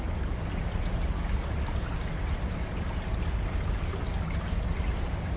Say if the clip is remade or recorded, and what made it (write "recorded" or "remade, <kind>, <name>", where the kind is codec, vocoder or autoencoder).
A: recorded